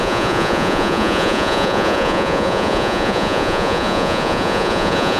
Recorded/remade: remade